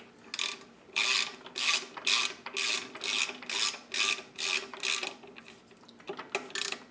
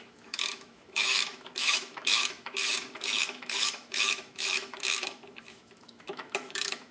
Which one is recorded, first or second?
first